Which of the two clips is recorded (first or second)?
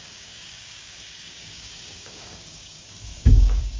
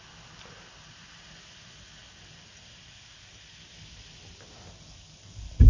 second